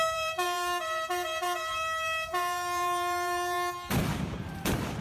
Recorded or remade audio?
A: remade